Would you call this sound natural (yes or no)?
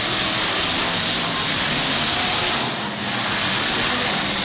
yes